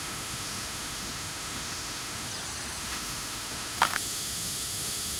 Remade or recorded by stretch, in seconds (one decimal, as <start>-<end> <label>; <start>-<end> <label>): 0.0-2.3 remade; 2.3-2.8 recorded; 2.8-5.2 remade